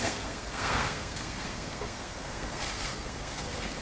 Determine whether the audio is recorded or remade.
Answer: remade